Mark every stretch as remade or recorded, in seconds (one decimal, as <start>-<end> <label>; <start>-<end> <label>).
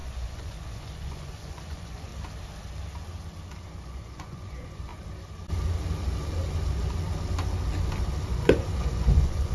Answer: 0.0-2.1 remade; 2.1-3.8 recorded; 3.8-4.9 remade; 4.9-8.3 recorded; 8.3-9.5 remade